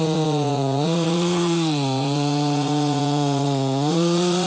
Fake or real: fake